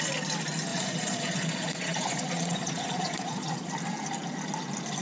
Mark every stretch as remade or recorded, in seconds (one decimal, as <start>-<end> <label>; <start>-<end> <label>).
0.0-0.7 recorded; 0.7-3.7 remade; 3.7-5.0 recorded